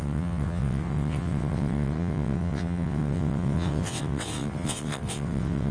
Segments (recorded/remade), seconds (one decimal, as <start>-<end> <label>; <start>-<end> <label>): 0.0-5.7 remade